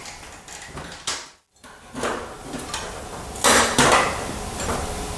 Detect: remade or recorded recorded